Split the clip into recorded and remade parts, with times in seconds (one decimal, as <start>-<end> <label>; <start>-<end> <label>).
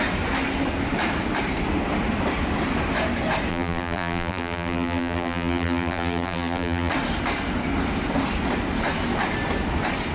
0.0-3.5 recorded; 3.5-6.9 remade; 6.9-10.1 recorded